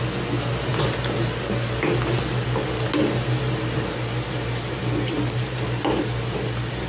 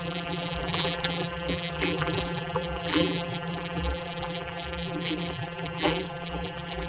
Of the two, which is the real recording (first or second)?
first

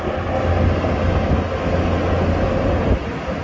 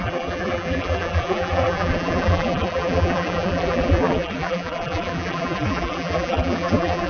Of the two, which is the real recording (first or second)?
first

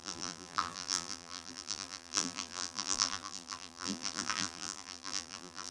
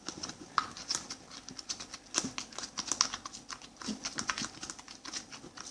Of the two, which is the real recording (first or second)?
second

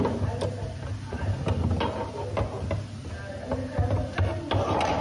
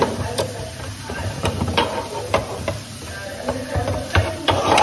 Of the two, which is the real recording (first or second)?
first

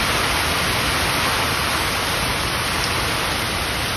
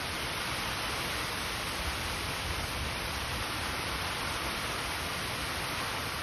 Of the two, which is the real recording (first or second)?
first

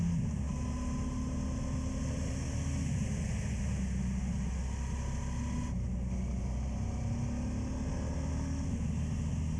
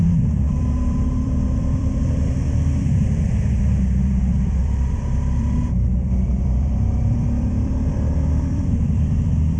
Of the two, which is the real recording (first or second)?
first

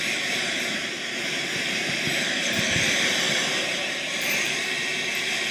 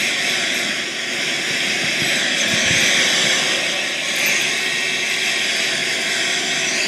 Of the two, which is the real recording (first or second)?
second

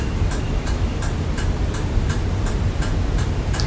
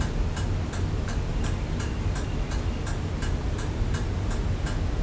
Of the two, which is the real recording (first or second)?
second